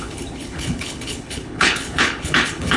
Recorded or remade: remade